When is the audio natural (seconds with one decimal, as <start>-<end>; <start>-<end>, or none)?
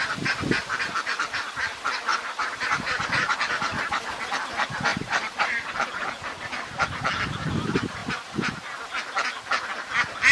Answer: 0.0-2.1; 4.1-4.9; 6.1-10.3